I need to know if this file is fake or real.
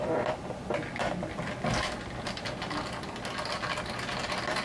real